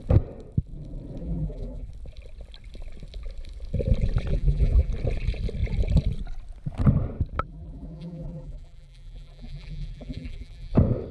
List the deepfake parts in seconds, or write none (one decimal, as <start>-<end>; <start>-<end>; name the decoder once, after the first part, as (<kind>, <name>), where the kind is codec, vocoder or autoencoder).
1.2-1.9 (vocoder, BigVGAN v2); 4.3-4.9; 7.5-10.7